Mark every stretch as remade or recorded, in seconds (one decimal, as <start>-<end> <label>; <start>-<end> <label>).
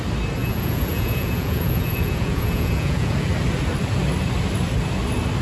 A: 0.0-0.4 recorded; 0.4-3.3 remade; 3.3-5.4 recorded